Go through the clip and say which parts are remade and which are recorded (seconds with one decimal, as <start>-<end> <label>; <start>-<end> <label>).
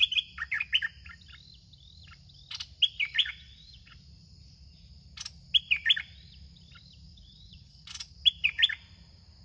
0.0-3.2 recorded; 3.2-4.0 remade; 4.0-7.1 recorded; 7.1-8.1 remade; 8.1-9.4 recorded